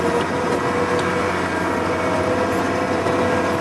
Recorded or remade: recorded